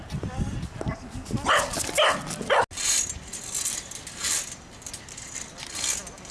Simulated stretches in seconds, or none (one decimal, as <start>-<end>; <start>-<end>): none